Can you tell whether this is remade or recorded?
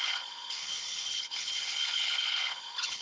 remade